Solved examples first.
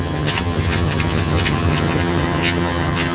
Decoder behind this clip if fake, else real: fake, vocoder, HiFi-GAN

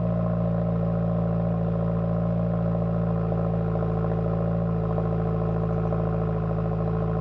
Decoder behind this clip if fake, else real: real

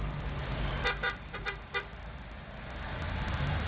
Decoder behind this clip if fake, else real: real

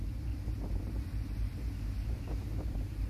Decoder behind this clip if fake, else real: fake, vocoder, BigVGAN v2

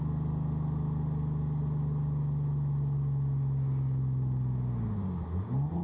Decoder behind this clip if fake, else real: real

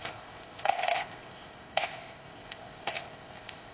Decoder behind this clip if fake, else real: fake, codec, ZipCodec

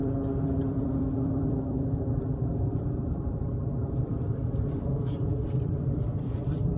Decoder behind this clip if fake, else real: fake, vocoder, BigVGAN v2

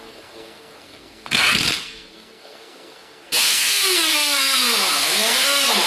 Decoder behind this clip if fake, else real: fake, codec, SNAC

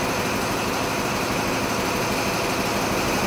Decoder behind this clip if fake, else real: real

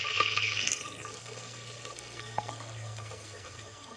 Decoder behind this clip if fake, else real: fake, codec, SNAC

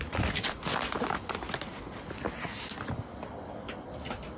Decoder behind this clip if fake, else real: real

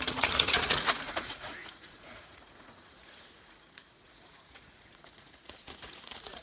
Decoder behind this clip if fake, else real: fake, vocoder, Vocos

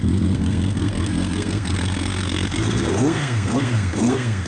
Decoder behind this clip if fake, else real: fake, codec, SNAC